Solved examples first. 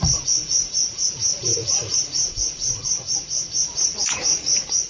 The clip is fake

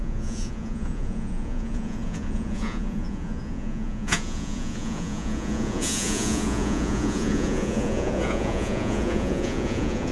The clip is fake